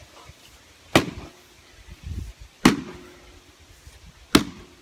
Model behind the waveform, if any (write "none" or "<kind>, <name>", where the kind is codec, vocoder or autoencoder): none